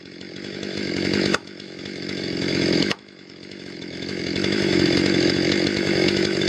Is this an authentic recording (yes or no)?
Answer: no